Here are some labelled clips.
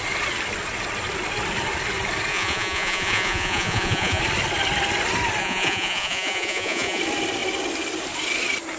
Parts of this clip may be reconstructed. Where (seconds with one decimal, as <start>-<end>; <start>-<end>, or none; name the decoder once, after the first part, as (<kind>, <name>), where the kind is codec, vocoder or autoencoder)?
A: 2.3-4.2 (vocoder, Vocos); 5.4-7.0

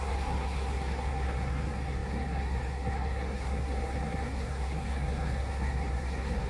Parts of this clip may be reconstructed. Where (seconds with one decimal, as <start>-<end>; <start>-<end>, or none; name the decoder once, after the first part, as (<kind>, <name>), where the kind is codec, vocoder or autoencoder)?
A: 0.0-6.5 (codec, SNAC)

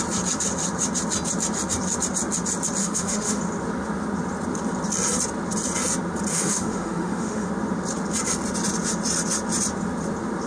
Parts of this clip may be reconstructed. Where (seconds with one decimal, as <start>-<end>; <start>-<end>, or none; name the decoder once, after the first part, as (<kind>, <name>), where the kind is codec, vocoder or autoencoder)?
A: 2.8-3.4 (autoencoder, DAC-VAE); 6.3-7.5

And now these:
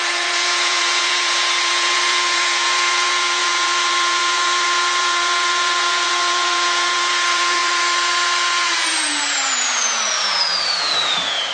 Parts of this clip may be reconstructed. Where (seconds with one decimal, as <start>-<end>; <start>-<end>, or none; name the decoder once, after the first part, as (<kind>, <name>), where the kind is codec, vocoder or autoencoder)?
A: 0.0-11.5 (vocoder, Vocos)

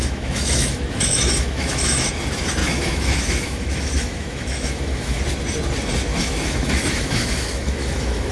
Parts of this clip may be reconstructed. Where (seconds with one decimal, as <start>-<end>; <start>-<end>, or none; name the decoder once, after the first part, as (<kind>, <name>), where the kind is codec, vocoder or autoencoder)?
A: 0.0-2.1 (autoencoder, DAC-VAE); 2.6-5.2; 6.1-8.3